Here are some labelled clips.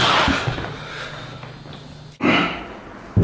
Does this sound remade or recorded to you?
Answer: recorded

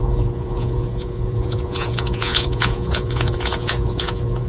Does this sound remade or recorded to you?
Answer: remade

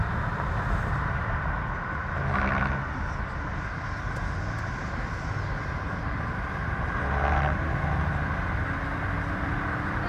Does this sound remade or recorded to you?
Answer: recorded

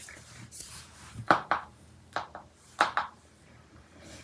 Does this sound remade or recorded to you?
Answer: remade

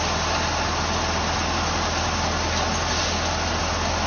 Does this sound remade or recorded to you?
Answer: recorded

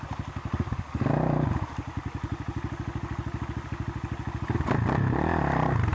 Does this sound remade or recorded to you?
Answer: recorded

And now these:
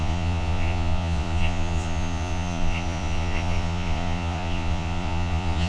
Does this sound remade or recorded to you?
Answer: remade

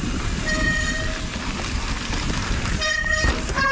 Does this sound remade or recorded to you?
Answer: recorded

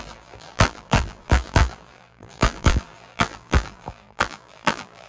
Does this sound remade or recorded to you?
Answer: remade